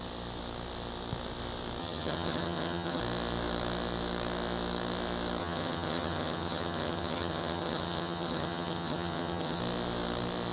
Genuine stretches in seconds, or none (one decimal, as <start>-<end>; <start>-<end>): 0.0-1.8; 3.0-5.4; 9.6-10.5